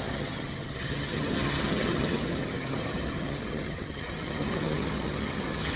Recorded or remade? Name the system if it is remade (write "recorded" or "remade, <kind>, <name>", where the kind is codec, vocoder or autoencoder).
remade, vocoder, HiFi-GAN